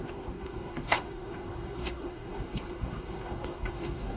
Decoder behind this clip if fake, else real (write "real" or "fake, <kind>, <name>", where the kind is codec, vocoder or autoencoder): fake, codec, SNAC